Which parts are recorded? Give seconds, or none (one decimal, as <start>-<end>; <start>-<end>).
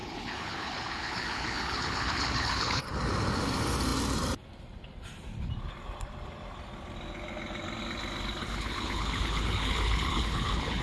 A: 2.8-8.4